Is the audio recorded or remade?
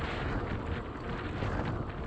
recorded